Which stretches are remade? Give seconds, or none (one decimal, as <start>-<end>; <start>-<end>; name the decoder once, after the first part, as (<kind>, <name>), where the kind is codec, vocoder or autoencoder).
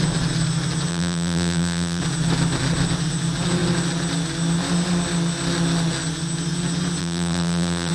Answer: 0.9-2.0 (vocoder, BigVGAN v2); 7.0-7.9